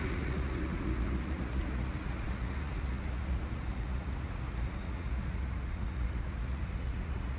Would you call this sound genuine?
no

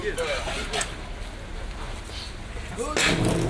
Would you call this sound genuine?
yes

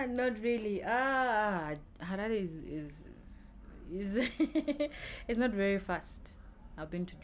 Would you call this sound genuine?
yes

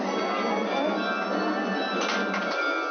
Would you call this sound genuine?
yes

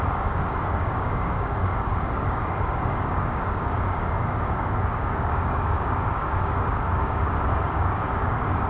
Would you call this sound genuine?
no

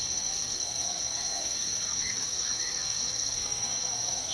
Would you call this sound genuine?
no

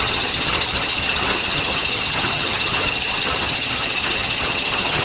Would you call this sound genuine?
no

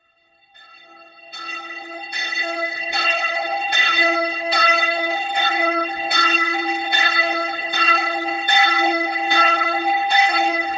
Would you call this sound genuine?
no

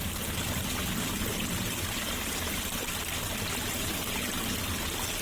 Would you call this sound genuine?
yes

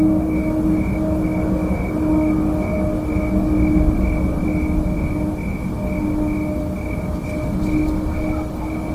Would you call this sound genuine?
yes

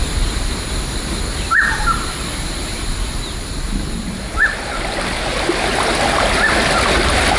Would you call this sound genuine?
yes